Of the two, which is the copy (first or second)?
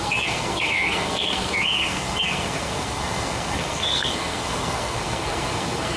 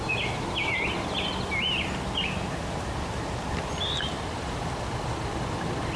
first